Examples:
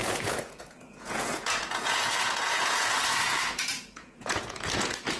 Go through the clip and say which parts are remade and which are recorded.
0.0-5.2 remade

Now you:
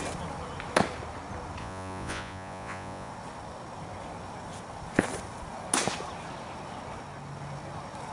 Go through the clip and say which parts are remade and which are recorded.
0.0-1.6 recorded; 1.6-3.1 remade; 3.1-8.1 recorded

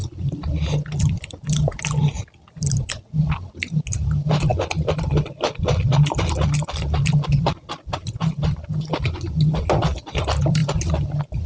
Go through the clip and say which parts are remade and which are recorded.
0.0-11.5 recorded

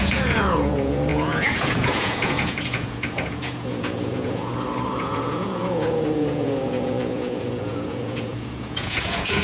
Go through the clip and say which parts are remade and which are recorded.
0.0-4.5 remade; 4.5-5.0 recorded; 5.0-9.4 remade

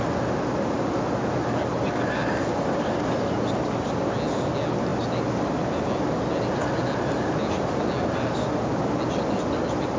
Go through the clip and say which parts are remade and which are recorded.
0.0-10.0 recorded

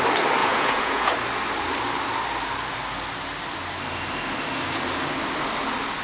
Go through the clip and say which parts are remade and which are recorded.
0.0-0.4 recorded; 0.4-1.1 remade; 1.1-6.0 recorded